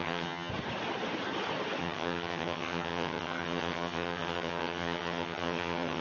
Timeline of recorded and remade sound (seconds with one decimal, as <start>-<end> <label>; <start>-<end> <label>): 0.0-0.5 remade; 0.5-1.8 recorded; 1.8-6.0 remade